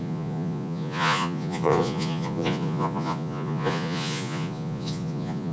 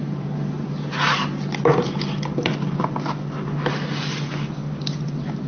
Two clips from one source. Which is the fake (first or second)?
first